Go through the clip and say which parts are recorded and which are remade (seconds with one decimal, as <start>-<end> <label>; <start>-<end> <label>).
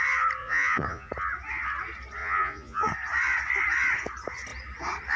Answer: 0.0-0.4 recorded; 0.4-1.1 remade; 1.1-2.2 recorded; 2.2-2.9 remade; 2.9-5.2 recorded